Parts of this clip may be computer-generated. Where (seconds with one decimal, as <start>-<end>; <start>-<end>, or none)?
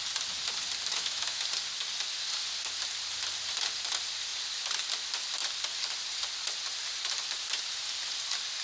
0.9-1.4